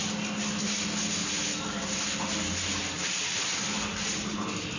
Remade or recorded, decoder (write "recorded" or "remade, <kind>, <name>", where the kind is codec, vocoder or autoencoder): recorded